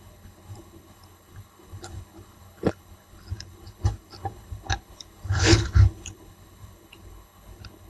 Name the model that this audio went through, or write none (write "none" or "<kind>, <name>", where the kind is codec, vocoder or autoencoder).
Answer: codec, HILCodec